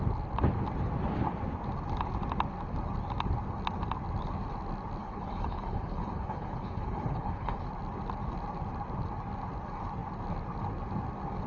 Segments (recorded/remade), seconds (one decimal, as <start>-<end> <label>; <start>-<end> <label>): 0.0-5.0 recorded; 5.0-7.7 remade; 7.7-11.5 recorded